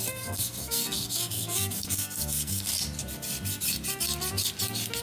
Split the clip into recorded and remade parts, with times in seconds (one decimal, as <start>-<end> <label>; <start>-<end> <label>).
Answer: 0.0-2.7 remade; 2.7-5.0 recorded